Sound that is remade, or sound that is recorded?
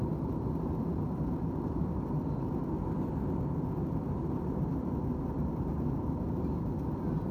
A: recorded